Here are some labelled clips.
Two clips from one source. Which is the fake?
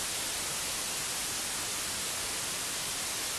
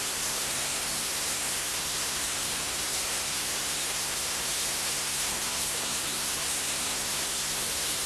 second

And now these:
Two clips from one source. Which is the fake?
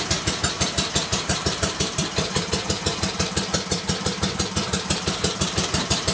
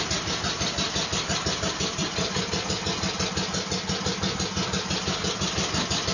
first